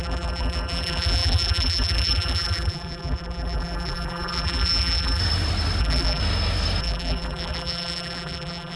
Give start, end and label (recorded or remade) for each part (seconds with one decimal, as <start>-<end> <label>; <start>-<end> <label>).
0.0-5.2 remade; 5.2-5.8 recorded; 5.8-6.2 remade; 6.2-6.8 recorded; 6.8-8.8 remade